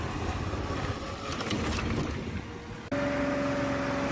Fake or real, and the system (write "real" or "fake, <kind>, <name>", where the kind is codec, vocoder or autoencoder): real